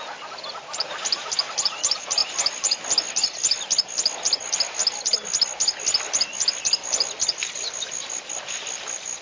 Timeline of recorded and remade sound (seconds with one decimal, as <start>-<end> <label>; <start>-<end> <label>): 0.0-2.2 remade; 2.2-6.6 recorded; 6.6-9.2 remade